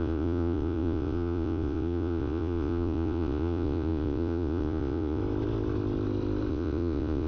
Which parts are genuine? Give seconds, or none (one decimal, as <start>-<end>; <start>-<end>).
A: 5.2-6.5